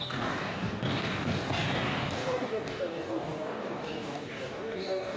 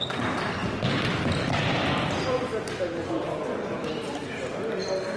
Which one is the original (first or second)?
second